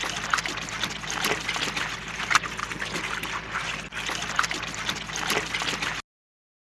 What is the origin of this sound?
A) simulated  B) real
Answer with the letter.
B